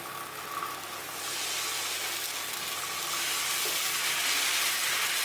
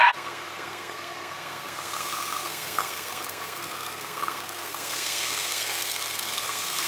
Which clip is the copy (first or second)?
second